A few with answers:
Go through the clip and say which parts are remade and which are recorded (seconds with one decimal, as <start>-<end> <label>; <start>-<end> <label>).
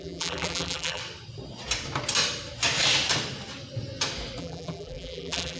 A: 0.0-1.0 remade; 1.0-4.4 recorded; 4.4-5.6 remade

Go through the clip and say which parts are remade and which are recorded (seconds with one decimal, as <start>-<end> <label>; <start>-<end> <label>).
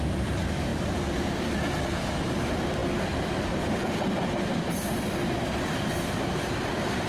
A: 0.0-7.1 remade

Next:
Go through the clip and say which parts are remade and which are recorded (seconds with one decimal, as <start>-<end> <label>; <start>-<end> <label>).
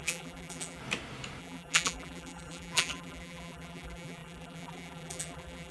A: 0.0-0.8 remade; 0.8-1.4 recorded; 1.4-5.7 remade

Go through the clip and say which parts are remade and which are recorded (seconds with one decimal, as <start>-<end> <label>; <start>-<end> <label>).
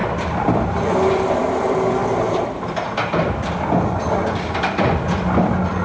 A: 0.0-1.1 recorded; 1.1-5.8 remade